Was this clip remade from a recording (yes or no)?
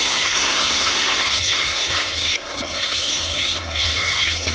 yes